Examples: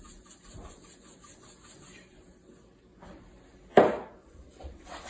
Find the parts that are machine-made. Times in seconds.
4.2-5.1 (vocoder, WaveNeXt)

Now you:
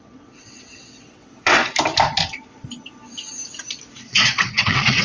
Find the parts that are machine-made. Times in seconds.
0.0-1.6 (vocoder, WaveNeXt); 3.9-5.0